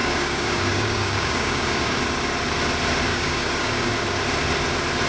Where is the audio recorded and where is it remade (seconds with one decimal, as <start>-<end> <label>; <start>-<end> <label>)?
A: 0.0-2.0 remade; 2.0-3.1 recorded; 3.1-3.9 remade; 3.9-5.1 recorded